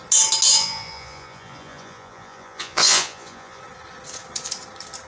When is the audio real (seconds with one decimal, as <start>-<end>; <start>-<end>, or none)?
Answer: 0.0-0.5; 3.6-5.1

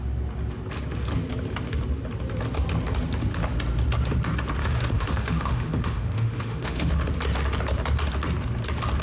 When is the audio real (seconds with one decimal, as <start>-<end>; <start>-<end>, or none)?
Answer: 0.0-4.6; 6.9-9.0